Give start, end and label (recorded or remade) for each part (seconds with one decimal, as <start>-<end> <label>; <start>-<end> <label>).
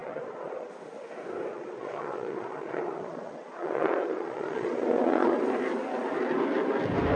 0.0-0.7 remade; 0.7-1.5 recorded; 1.5-5.4 remade; 5.4-7.2 recorded